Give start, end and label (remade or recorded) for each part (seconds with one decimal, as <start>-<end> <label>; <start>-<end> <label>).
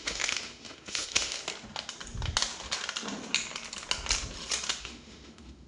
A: 0.0-1.4 remade; 1.4-4.8 recorded; 4.8-5.7 remade